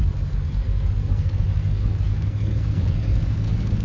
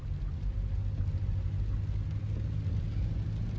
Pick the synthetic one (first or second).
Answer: first